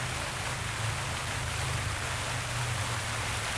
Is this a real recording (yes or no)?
yes